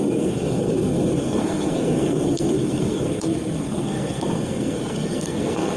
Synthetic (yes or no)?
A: yes